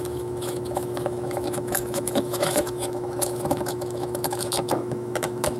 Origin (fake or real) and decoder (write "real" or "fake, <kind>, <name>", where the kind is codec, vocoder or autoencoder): fake, autoencoder, DAC-VAE